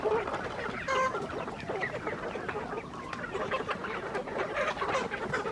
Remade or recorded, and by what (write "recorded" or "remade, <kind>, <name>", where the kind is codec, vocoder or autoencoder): recorded